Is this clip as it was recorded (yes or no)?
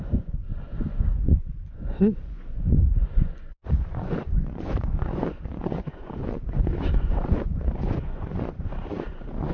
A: no